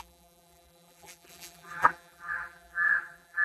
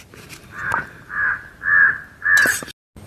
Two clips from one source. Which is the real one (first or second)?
second